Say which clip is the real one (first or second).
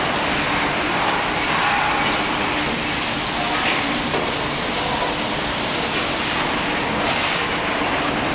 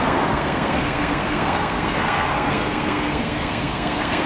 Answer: first